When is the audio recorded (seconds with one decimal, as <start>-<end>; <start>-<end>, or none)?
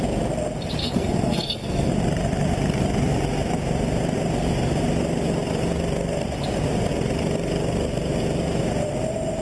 0.0-0.8; 1.9-9.4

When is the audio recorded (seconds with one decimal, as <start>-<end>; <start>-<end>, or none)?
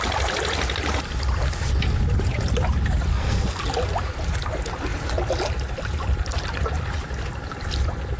0.0-3.1; 3.6-8.2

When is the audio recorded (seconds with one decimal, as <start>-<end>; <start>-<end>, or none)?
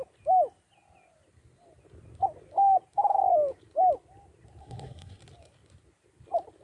0.0-4.6; 5.2-6.6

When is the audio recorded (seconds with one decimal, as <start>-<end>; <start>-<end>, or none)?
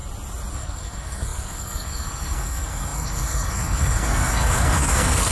0.0-0.5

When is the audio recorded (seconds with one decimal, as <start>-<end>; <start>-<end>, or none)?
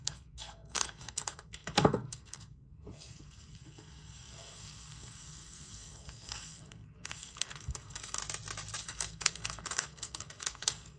8.2-8.8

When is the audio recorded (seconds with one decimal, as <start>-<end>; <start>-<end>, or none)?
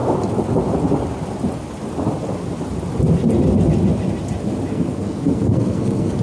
0.0-4.7